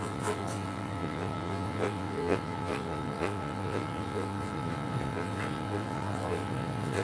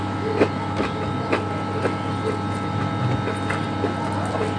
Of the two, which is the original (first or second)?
second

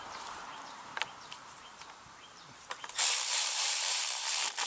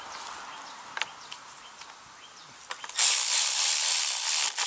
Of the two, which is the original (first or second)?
second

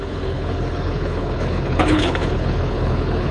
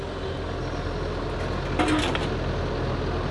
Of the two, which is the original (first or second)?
second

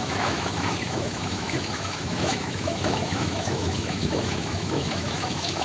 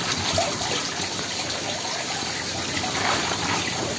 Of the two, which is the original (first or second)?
second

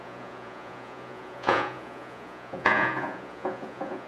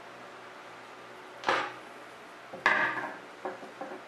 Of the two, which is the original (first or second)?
second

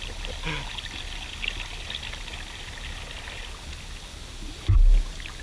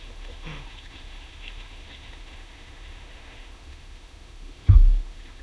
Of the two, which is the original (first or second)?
first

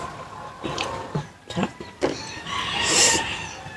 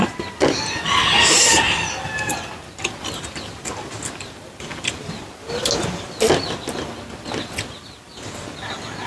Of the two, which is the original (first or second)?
second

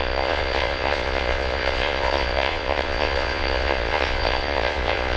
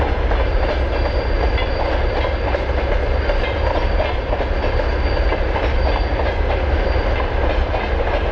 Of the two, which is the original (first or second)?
second